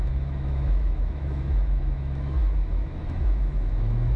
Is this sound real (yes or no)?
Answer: no